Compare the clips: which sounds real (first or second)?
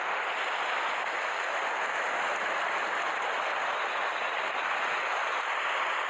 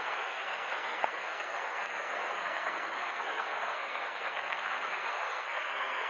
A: first